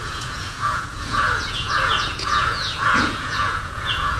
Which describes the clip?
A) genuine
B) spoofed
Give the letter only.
B